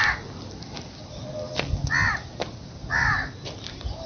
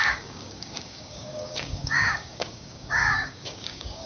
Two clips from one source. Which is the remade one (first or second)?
second